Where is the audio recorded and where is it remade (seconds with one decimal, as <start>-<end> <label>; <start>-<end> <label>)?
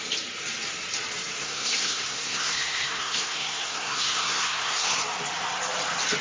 0.0-1.4 recorded; 1.4-5.0 remade; 5.0-6.2 recorded